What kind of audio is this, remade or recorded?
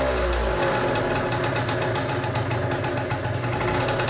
recorded